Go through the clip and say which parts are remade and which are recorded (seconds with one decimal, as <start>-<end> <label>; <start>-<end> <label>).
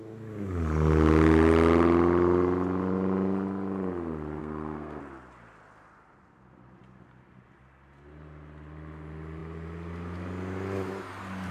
0.0-4.4 recorded; 4.4-5.0 remade; 5.0-11.5 recorded